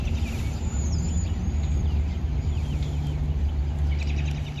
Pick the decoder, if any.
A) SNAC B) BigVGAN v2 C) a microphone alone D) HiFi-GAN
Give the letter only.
C